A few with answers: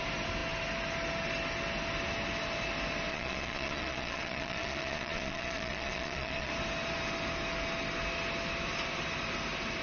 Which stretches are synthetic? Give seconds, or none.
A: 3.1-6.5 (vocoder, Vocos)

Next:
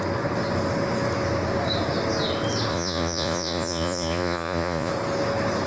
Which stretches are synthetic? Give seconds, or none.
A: 2.7-4.9 (vocoder, Vocos)